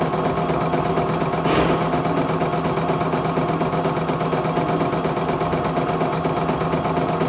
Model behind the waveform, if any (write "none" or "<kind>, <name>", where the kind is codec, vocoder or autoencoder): none